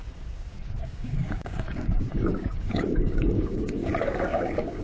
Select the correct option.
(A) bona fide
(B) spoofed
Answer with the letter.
B